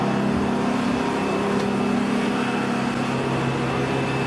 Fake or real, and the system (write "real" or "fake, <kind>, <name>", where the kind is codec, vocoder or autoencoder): real